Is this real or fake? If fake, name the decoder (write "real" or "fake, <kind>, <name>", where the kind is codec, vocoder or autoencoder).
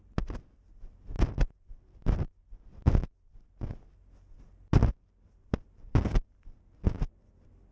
real